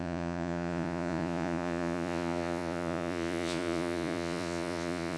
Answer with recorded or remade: remade